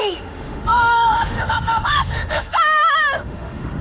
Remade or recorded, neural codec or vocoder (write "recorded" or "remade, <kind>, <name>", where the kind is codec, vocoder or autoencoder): remade, autoencoder, DAC-VAE